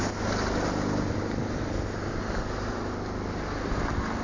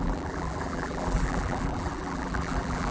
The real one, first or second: first